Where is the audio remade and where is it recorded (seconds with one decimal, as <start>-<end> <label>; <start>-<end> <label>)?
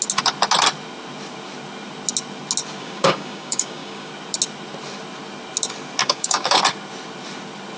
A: 0.0-2.8 recorded; 2.8-4.1 remade; 4.1-6.0 recorded; 6.0-6.6 remade; 6.6-7.8 recorded